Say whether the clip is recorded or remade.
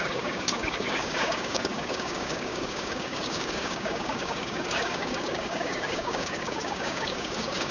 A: remade